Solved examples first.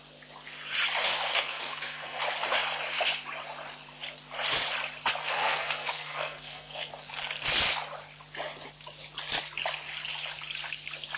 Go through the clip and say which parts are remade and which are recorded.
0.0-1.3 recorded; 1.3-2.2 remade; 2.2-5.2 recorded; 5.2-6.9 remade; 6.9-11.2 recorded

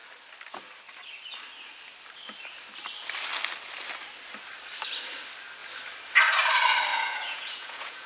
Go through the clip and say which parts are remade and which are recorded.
0.0-6.9 recorded; 6.9-8.1 remade

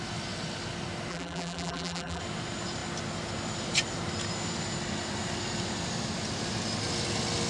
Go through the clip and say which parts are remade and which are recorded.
0.0-1.1 recorded; 1.1-2.2 remade; 2.2-7.5 recorded

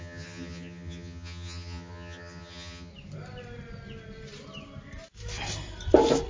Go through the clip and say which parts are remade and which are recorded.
0.0-2.9 remade; 2.9-6.3 recorded

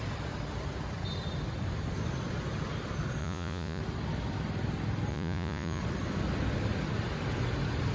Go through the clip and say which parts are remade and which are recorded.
0.0-3.2 recorded; 3.2-3.8 remade; 3.8-5.1 recorded; 5.1-5.8 remade; 5.8-7.9 recorded

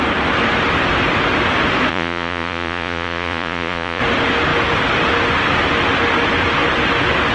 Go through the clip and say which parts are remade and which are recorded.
0.0-1.9 recorded; 1.9-4.0 remade; 4.0-7.3 recorded

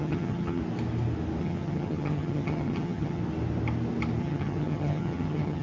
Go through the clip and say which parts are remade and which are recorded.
0.0-0.6 remade; 0.6-1.4 recorded; 1.4-3.2 remade; 3.2-4.2 recorded; 4.2-5.6 remade

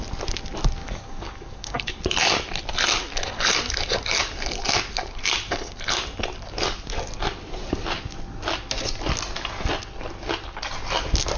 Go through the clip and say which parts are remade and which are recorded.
0.0-0.8 recorded; 0.8-2.0 remade; 2.0-11.4 recorded